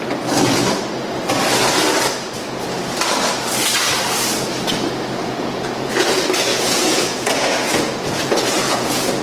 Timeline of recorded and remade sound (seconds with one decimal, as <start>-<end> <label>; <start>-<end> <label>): 0.0-5.2 recorded; 5.2-5.9 remade; 5.9-6.5 recorded; 6.5-9.2 remade